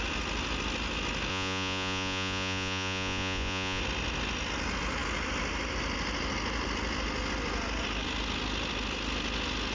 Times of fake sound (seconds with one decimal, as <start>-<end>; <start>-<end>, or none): 1.3-3.8